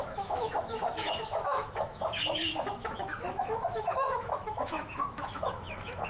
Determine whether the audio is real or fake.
fake